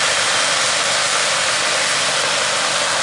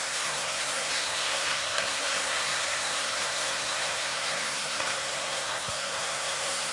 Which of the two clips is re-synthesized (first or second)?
second